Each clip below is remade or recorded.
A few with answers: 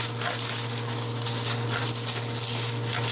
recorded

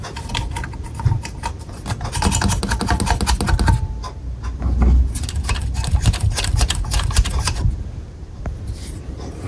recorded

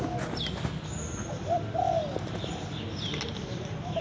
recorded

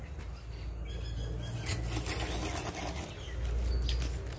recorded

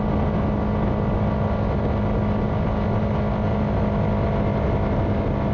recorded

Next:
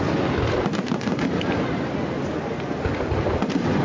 recorded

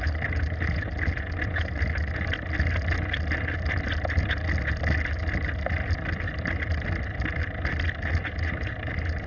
recorded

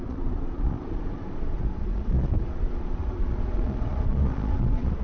remade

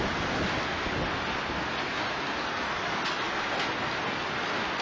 recorded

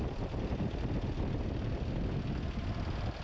recorded